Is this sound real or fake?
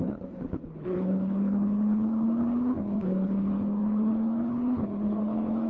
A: fake